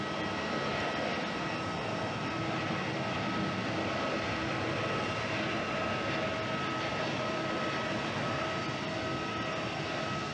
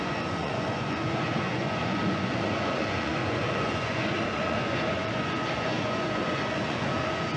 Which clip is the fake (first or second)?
second